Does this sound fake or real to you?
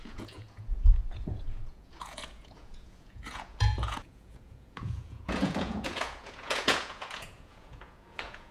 fake